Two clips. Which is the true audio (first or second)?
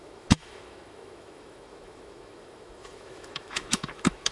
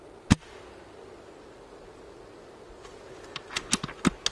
second